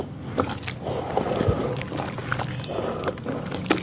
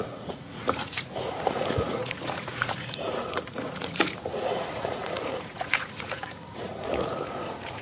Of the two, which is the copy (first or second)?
second